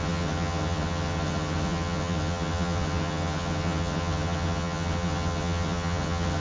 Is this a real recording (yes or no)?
no